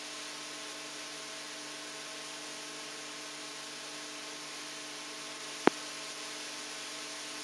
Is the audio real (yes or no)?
yes